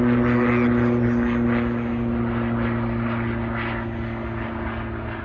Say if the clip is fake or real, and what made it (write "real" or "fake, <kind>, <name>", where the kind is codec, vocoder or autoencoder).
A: real